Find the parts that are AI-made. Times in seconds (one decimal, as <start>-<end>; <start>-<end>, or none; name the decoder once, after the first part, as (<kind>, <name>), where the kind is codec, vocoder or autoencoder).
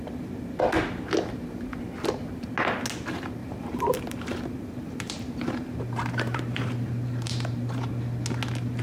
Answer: 3.4-7.9 (vocoder, BigVGAN v2)